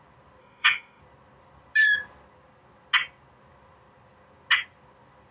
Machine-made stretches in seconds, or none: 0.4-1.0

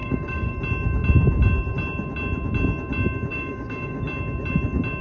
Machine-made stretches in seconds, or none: 0.0-0.5; 3.3-4.0

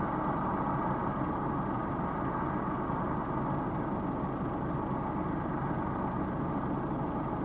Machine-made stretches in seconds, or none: none

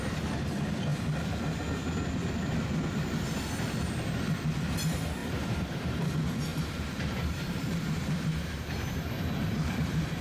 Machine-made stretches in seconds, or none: 0.9-1.6; 5.2-6.1; 6.5-10.2